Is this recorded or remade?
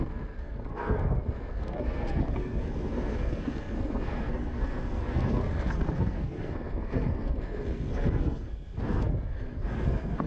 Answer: remade